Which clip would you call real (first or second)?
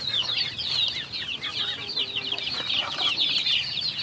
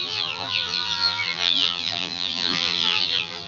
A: first